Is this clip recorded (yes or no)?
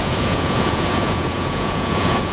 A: no